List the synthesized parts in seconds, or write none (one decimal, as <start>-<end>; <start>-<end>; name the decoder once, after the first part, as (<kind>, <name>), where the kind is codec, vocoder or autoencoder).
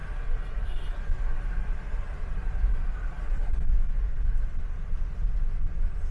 0.0-3.1 (vocoder, BigVGAN v2)